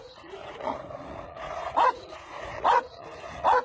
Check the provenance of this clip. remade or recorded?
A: remade